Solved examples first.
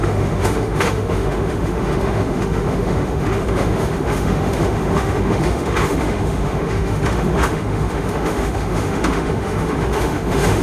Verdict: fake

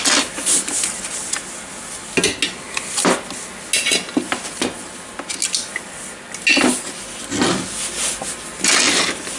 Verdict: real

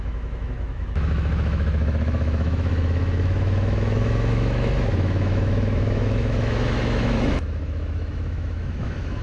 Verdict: fake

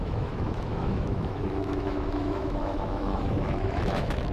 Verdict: fake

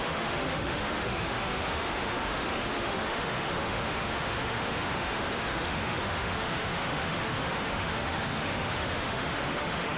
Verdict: fake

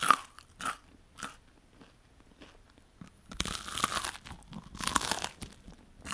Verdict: real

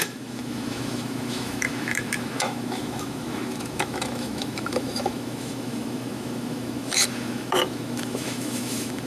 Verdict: fake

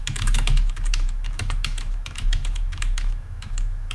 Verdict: fake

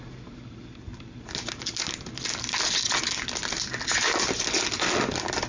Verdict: real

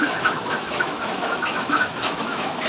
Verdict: fake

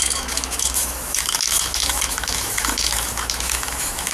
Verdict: fake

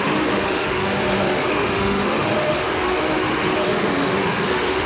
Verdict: fake